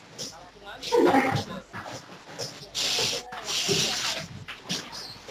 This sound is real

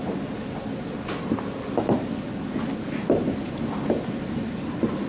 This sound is real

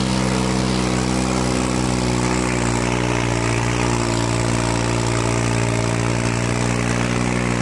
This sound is real